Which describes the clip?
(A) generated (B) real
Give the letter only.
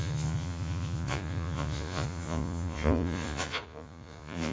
A